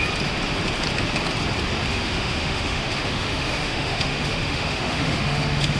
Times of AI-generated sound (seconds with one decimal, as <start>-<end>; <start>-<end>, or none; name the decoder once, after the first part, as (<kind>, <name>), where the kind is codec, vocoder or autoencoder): 1.9-5.8 (autoencoder, DAC-VAE)